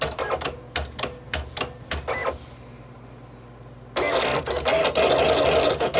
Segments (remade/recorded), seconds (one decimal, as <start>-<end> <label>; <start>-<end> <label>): 0.0-6.0 recorded